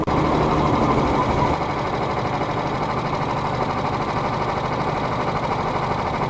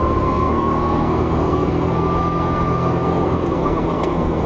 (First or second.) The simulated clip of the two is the second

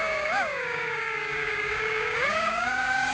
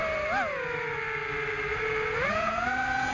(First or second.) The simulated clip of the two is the first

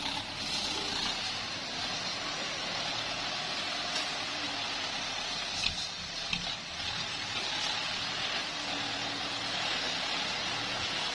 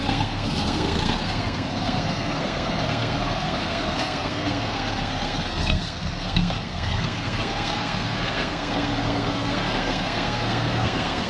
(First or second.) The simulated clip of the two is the second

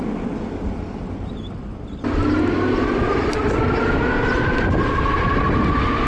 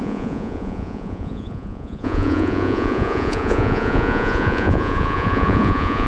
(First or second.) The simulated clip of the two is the second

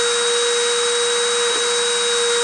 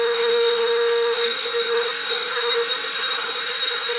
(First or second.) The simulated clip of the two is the second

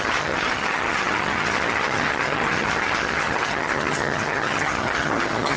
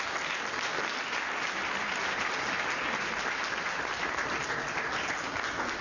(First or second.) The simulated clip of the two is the first